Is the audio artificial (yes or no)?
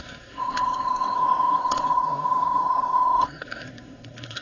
yes